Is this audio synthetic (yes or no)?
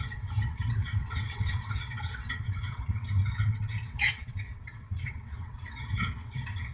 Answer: yes